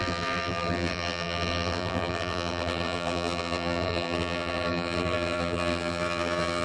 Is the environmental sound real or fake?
fake